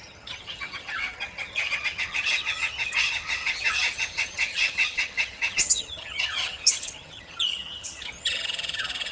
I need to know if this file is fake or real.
fake